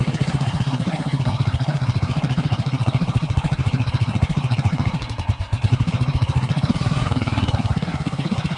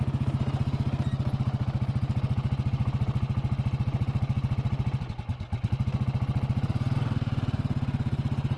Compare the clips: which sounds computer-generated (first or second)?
first